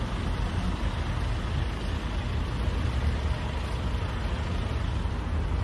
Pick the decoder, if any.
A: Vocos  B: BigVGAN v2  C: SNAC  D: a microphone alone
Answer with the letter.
D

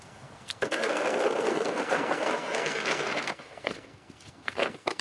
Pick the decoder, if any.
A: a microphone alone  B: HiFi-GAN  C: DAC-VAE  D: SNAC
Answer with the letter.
D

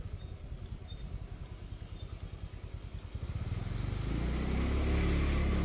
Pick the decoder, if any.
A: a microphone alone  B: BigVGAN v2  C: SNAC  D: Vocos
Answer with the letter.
A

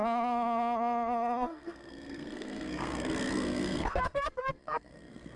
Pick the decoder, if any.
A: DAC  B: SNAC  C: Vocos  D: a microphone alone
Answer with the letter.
B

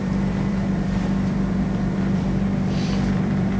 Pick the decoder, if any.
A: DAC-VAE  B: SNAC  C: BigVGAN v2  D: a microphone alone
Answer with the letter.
C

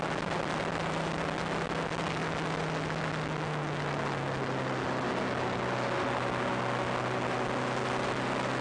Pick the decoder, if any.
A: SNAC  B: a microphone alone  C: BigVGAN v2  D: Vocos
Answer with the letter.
B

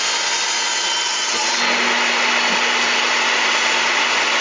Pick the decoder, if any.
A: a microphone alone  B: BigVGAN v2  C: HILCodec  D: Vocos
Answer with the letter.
A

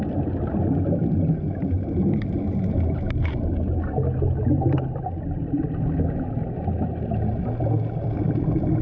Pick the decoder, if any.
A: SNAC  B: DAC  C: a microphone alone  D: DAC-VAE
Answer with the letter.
C